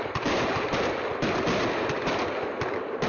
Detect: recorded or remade recorded